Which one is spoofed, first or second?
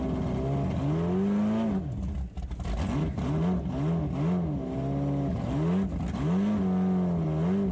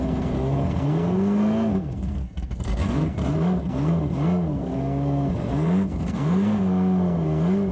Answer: second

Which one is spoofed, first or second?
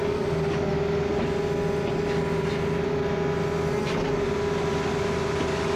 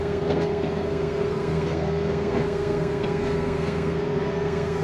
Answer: second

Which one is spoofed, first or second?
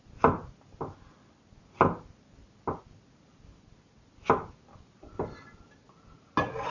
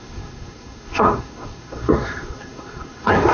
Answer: second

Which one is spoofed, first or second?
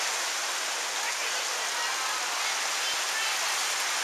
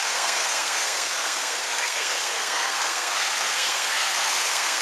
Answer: second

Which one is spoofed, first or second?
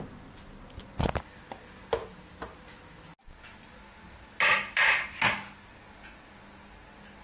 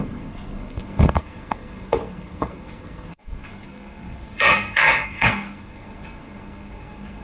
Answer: second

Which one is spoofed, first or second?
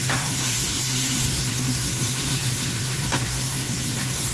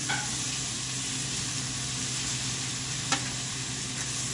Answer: first